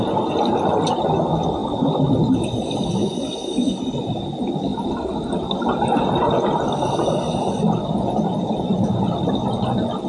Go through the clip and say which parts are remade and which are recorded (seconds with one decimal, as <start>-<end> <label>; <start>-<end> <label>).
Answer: 0.0-10.1 recorded